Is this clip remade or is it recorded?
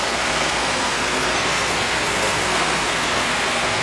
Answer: remade